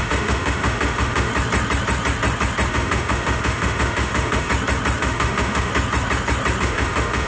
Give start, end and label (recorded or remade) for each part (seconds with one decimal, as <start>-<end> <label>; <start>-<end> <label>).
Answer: 0.0-1.3 remade; 1.3-2.7 recorded; 2.7-4.5 remade; 4.5-5.0 recorded; 5.0-5.7 remade; 5.7-6.6 recorded; 6.6-7.3 remade